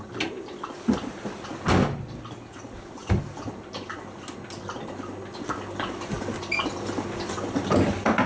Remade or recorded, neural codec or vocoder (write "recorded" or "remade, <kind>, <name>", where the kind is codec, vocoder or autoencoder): recorded